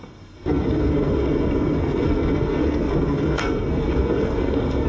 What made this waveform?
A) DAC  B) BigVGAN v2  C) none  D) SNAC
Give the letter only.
D